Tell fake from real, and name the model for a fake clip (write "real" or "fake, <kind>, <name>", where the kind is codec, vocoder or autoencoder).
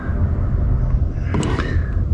real